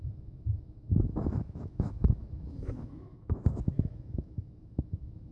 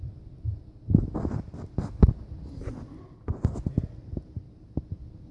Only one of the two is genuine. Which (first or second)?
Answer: second